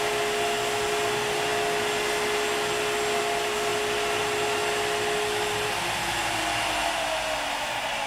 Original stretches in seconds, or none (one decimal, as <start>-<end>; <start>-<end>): 0.0-8.1